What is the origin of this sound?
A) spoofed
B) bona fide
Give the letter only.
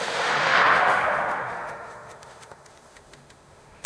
A